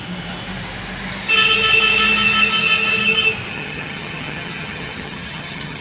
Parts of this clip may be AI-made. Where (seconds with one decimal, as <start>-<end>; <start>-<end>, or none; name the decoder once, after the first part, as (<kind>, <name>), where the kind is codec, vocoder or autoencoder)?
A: 3.5-5.8 (vocoder, HiFi-GAN)